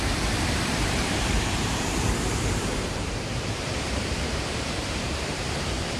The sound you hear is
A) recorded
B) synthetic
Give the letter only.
B